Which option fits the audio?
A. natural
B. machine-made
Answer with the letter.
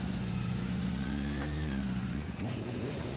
B